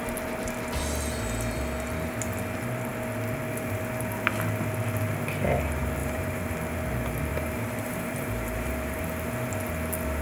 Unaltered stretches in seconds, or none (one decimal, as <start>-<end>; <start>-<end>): 0.0-6.0; 6.5-7.3; 9.3-10.2